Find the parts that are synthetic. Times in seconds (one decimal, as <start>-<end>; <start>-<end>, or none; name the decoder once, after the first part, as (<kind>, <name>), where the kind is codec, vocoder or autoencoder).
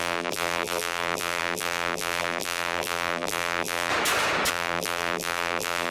0.0-3.9 (vocoder, BigVGAN v2); 4.5-5.9